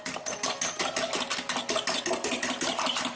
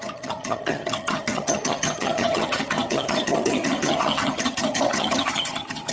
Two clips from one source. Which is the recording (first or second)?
first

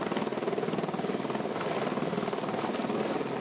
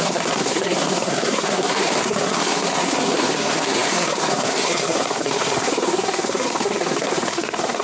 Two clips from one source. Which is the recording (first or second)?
first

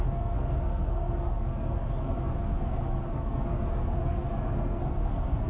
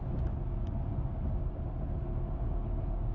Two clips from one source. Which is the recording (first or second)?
second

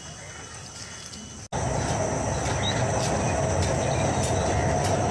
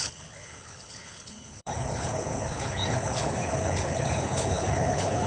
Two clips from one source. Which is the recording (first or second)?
first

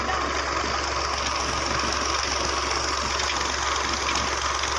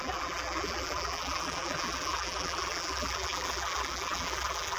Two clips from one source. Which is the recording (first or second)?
first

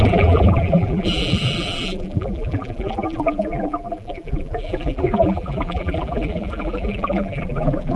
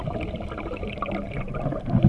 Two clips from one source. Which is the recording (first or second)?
second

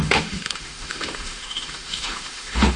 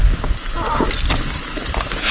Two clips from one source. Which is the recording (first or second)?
second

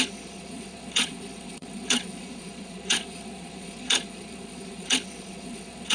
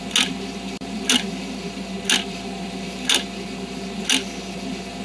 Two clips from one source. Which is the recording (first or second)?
second